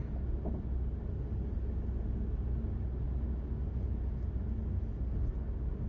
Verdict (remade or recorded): recorded